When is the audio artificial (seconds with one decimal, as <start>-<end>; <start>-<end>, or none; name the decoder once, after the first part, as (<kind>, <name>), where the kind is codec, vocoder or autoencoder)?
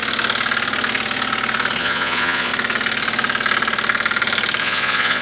1.8-2.5 (vocoder, Vocos); 4.6-5.2